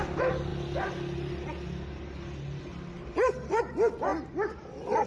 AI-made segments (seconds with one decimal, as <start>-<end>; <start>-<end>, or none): none